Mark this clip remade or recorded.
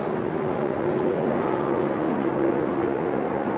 remade